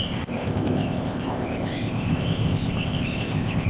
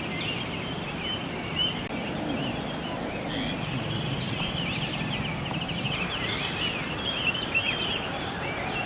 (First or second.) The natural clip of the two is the second